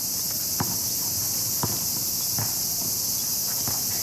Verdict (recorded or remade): recorded